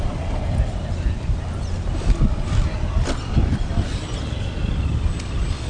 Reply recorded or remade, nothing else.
recorded